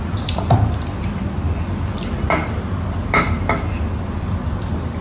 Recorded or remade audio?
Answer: recorded